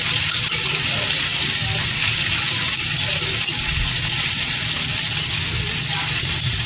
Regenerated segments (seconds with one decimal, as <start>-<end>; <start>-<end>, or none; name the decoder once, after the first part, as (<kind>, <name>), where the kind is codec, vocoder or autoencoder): none